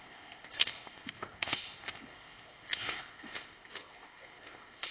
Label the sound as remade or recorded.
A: remade